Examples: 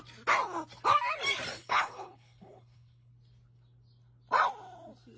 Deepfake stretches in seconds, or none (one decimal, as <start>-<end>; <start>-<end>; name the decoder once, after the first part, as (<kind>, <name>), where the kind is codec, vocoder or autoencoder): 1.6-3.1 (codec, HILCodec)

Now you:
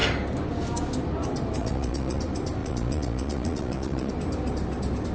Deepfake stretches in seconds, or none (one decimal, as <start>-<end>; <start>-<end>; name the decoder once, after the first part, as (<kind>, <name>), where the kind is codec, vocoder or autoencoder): 1.6-2.2 (vocoder, Vocos); 2.6-4.1

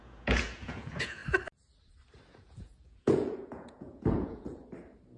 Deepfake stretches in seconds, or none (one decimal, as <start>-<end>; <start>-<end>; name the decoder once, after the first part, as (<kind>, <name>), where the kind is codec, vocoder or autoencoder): 0.0-1.2 (vocoder, Vocos); 2.3-4.6

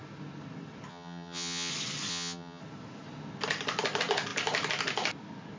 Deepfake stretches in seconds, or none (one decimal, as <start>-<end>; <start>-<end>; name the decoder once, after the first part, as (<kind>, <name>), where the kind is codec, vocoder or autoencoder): 0.9-1.7 (vocoder, HiFi-GAN); 2.1-2.6